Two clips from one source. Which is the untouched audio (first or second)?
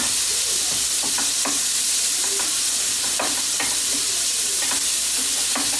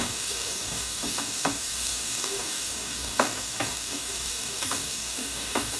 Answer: first